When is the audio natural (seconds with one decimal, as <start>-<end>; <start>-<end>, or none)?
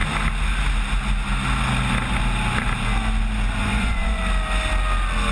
0.0-3.6; 4.2-5.3